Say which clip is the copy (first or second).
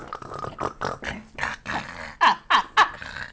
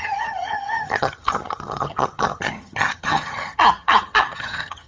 second